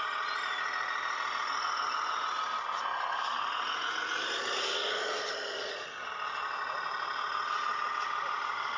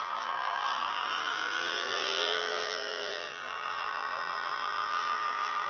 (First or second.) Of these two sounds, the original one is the first